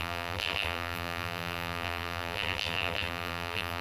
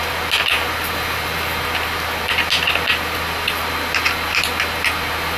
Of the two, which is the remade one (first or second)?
first